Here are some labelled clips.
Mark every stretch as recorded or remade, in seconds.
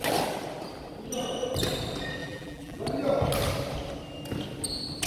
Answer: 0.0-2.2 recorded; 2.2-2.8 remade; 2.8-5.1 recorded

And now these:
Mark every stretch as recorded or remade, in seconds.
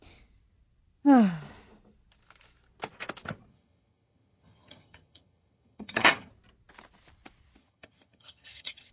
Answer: 0.0-3.5 recorded; 3.5-6.3 remade; 6.3-7.6 recorded; 7.6-8.9 remade